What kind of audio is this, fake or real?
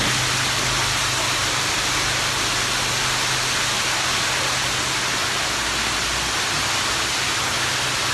real